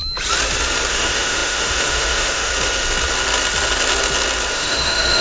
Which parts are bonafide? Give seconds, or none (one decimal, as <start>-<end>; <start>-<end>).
0.0-0.9; 2.5-4.5